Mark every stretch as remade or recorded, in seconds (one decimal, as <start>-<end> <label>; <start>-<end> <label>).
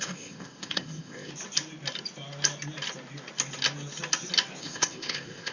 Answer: 0.0-1.3 remade; 1.3-4.6 recorded; 4.6-5.5 remade